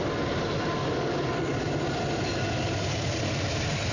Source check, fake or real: real